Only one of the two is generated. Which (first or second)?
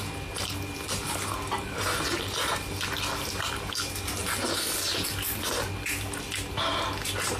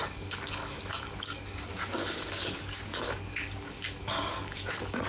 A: second